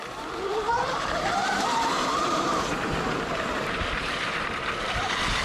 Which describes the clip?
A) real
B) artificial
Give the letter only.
B